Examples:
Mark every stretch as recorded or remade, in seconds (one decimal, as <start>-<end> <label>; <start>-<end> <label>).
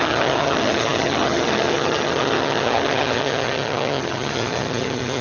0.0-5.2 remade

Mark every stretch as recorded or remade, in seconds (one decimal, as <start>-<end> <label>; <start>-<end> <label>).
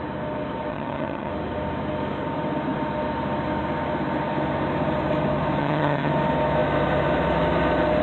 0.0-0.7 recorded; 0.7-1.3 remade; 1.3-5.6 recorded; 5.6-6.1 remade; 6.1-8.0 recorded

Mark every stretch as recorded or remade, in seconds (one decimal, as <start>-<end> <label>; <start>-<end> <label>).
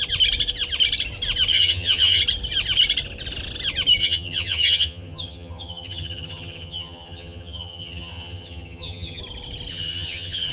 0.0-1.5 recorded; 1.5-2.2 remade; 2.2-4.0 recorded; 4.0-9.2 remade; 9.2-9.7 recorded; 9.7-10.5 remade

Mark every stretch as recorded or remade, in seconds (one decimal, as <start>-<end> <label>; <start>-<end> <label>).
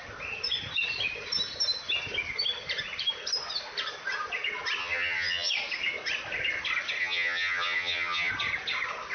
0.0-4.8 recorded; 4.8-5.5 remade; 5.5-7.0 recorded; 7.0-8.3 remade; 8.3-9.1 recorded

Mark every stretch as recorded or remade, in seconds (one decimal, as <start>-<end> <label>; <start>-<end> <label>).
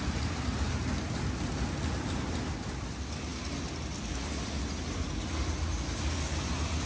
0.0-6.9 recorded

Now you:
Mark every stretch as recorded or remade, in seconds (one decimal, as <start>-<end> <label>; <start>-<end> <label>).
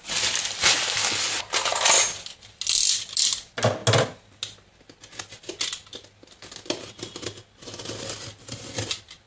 0.0-9.3 recorded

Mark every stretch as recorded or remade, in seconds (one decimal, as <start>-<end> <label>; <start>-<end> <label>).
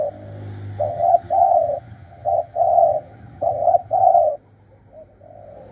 0.0-0.9 recorded; 0.9-4.3 remade; 4.3-5.7 recorded